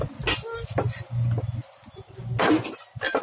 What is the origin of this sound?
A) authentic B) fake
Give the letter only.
A